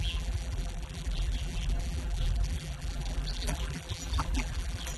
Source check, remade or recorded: remade